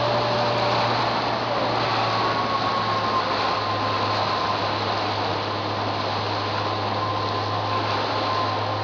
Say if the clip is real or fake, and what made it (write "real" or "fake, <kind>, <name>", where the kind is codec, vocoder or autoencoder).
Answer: real